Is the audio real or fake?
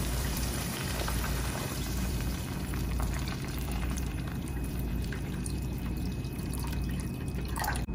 fake